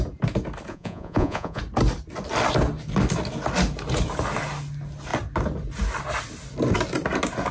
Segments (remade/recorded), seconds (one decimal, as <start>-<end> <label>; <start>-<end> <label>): 0.0-0.7 recorded; 0.7-1.6 remade; 1.6-7.5 recorded

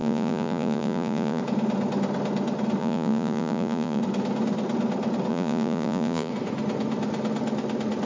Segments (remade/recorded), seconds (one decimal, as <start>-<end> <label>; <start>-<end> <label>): 0.0-1.4 remade; 1.4-2.8 recorded; 2.8-4.0 remade; 4.0-5.3 recorded; 5.3-6.3 remade; 6.3-8.1 recorded